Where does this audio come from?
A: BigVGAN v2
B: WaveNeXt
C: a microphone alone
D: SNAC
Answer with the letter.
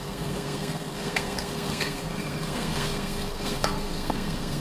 D